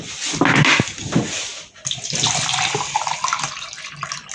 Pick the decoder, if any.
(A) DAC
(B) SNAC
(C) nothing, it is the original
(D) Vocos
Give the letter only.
C